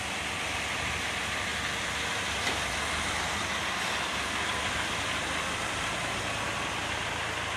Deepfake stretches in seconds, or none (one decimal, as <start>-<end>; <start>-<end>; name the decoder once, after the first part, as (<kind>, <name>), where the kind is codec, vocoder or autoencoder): none